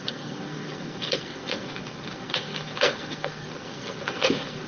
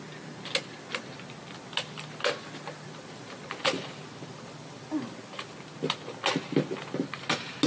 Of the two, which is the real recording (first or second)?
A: second